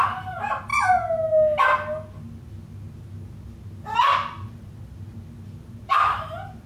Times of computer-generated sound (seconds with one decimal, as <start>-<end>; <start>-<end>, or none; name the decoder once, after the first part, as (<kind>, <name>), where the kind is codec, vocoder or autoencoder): none